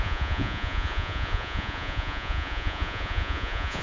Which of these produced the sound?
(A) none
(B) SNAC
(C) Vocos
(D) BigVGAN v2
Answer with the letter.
C